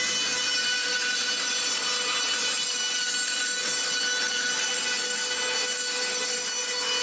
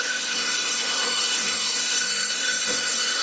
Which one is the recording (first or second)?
first